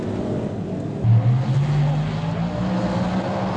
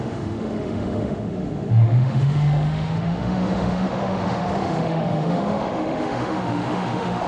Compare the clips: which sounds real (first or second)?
first